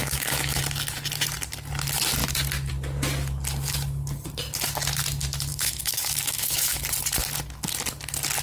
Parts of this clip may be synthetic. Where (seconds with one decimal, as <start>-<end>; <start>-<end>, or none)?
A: 0.0-0.6; 5.5-6.8